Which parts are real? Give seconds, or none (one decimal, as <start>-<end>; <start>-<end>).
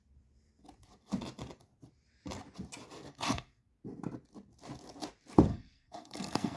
0.0-3.1; 3.7-5.5